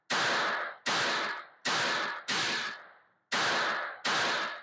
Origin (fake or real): real